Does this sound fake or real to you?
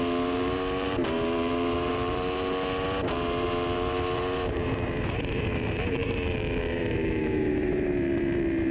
fake